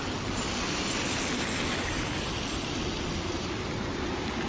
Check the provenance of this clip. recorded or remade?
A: recorded